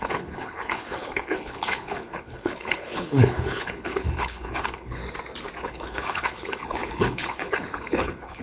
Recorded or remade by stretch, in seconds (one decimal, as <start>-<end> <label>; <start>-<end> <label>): 0.0-5.0 remade; 5.0-5.6 recorded; 5.6-8.4 remade